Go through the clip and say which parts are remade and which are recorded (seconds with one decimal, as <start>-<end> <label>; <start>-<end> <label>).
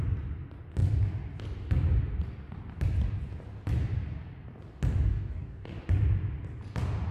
0.0-5.1 recorded; 5.1-5.8 remade; 5.8-7.1 recorded